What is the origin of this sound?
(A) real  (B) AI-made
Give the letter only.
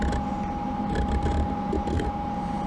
A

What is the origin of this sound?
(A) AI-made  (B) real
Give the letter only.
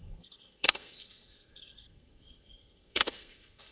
A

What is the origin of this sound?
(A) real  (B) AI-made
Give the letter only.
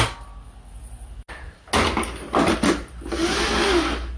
A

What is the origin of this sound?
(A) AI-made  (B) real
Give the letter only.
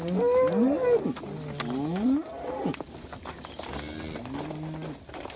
B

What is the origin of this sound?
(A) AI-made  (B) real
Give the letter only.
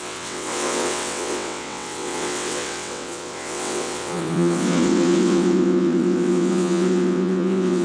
A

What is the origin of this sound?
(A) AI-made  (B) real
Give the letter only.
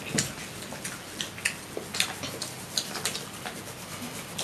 B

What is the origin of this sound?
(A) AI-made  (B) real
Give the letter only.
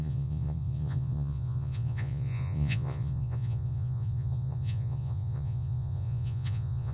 A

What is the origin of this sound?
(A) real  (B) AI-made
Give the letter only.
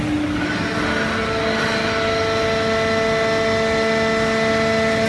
A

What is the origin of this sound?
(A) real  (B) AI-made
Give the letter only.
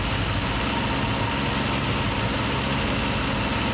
A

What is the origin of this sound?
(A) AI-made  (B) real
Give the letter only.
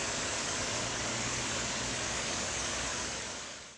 A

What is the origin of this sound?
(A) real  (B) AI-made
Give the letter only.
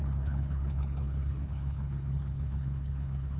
B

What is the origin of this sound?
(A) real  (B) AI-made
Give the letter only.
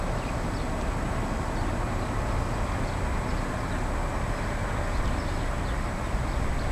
A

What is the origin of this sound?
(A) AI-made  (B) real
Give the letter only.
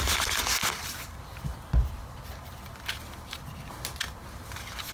B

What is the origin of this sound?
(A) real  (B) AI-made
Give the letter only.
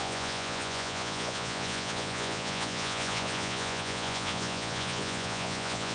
B